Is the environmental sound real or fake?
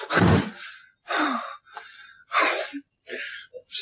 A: fake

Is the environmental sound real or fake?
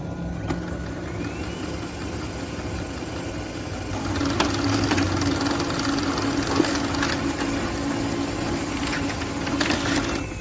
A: real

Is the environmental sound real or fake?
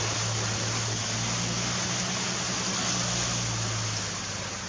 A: real